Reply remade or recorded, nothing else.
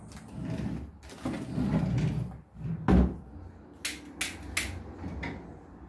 recorded